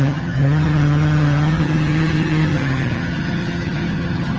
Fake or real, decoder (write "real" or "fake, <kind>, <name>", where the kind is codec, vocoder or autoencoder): fake, vocoder, HiFi-GAN